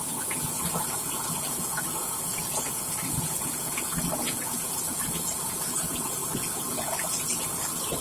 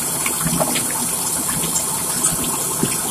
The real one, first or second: second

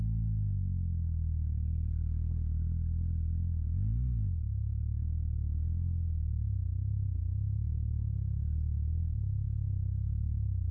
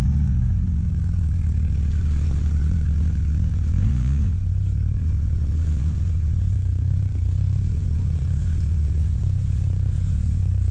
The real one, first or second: first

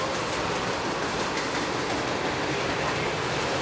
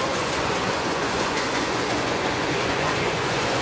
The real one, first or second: first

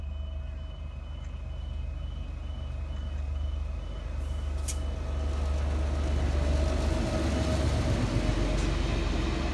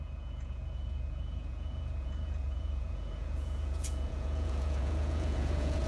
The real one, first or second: first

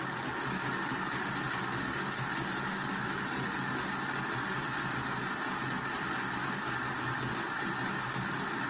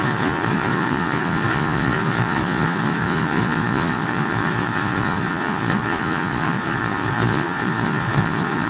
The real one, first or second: first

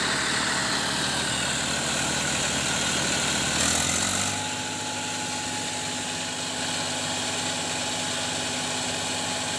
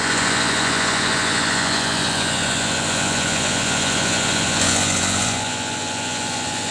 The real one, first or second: first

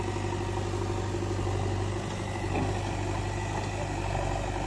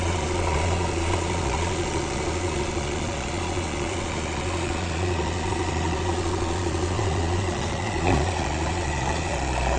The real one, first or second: first